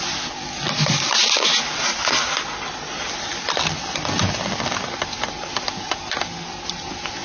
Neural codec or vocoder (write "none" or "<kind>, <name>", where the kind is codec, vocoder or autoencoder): none